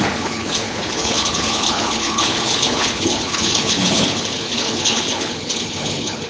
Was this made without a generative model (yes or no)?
no